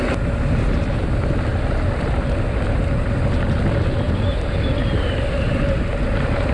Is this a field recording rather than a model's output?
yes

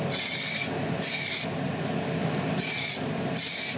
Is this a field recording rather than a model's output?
yes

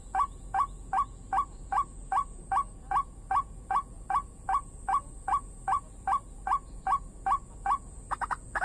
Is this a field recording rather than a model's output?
no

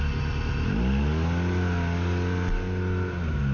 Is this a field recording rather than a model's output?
yes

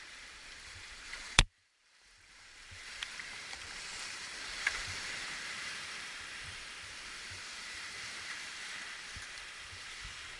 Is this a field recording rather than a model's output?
no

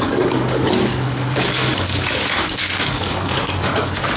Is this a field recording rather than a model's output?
no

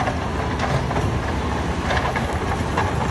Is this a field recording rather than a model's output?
yes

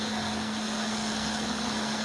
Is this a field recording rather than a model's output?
no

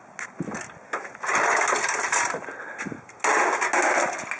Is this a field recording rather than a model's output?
yes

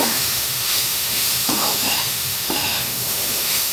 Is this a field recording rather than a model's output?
no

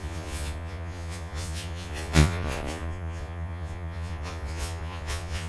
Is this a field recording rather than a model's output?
no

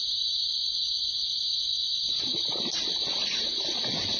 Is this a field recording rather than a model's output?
yes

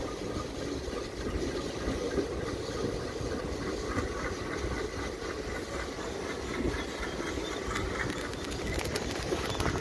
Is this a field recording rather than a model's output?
yes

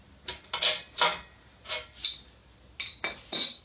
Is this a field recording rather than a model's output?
yes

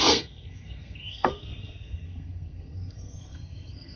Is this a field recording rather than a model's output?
no